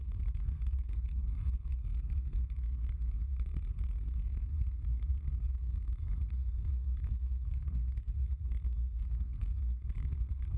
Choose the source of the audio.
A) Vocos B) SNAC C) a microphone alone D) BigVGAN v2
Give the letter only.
B